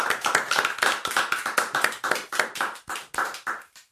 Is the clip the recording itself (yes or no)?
yes